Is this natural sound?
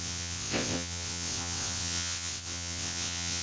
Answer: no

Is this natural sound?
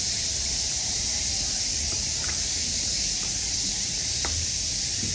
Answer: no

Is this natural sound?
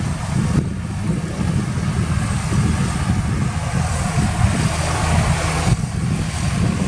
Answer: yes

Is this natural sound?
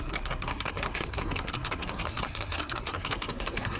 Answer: no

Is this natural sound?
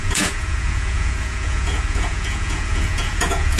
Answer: no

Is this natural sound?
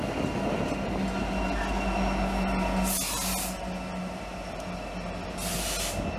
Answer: yes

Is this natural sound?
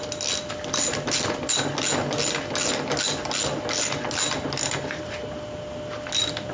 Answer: yes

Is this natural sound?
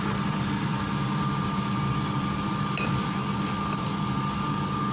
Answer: no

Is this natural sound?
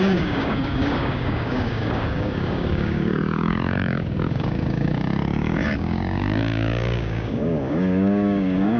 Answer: no